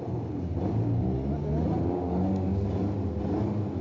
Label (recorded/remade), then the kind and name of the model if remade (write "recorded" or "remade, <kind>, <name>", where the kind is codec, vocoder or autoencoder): recorded